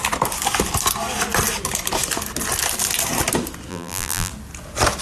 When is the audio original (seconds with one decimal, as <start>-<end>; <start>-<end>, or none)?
0.0-3.7; 4.3-5.0